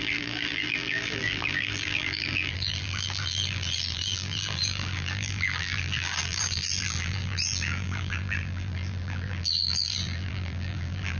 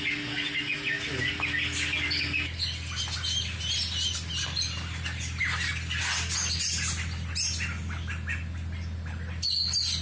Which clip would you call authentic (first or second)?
second